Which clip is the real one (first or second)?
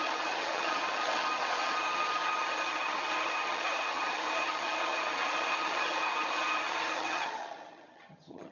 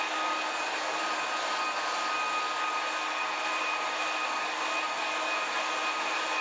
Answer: second